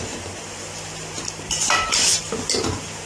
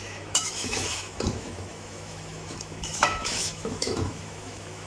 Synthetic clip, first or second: second